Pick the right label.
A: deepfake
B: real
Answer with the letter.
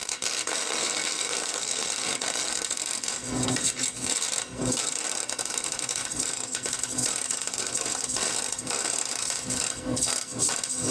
A